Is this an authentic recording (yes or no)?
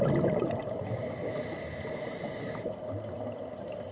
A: yes